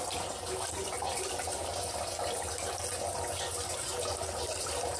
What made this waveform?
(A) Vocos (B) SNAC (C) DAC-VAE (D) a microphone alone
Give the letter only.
D